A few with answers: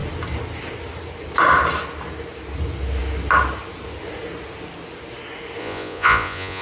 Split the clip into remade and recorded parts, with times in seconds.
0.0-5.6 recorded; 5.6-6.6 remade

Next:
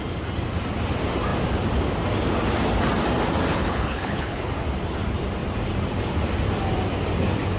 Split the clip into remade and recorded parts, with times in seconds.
0.0-3.5 recorded; 3.5-4.5 remade; 4.5-7.6 recorded

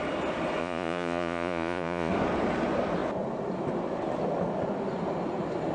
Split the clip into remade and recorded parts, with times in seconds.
0.0-0.6 recorded; 0.6-2.1 remade; 2.1-5.7 recorded

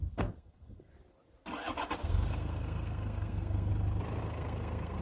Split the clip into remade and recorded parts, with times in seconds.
0.0-0.9 remade; 0.9-2.0 recorded; 2.0-3.7 remade; 3.7-4.2 recorded; 4.2-5.0 remade

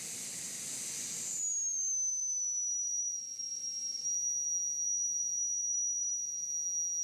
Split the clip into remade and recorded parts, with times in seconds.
0.0-7.0 recorded

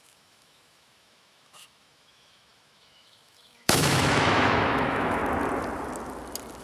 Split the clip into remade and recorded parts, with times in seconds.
0.0-5.2 remade; 5.2-6.6 recorded